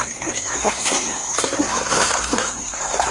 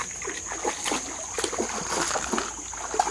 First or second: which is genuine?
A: second